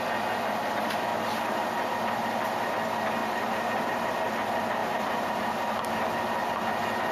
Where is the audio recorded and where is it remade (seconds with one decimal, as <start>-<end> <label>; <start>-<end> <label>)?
0.0-3.2 recorded; 3.2-4.1 remade; 4.1-4.8 recorded; 4.8-5.4 remade; 5.4-7.1 recorded